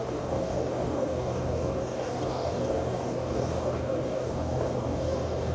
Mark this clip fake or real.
fake